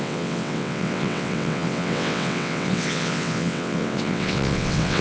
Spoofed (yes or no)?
yes